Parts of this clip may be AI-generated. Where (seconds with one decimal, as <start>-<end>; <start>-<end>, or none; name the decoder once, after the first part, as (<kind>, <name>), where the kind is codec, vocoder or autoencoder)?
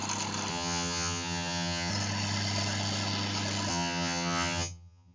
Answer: 0.5-1.9 (vocoder, HiFi-GAN); 3.7-5.1